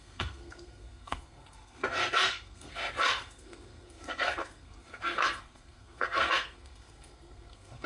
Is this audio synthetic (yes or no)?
yes